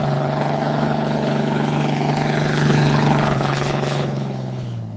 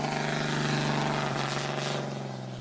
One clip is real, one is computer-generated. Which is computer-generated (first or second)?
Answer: first